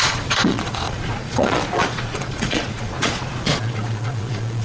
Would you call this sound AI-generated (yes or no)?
yes